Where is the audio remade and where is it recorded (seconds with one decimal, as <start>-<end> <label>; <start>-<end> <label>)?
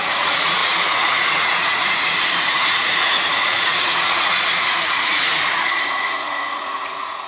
0.0-7.3 remade